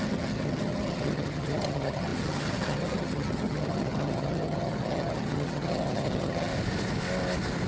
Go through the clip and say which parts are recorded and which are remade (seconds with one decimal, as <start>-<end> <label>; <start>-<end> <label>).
0.0-6.5 remade; 6.5-7.7 recorded